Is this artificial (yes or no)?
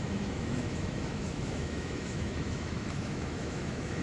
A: yes